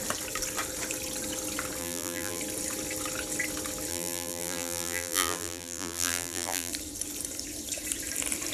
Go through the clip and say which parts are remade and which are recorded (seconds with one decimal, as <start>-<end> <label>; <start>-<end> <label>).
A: 0.0-1.8 recorded; 1.8-2.4 remade; 2.4-3.9 recorded; 3.9-6.7 remade; 6.7-8.5 recorded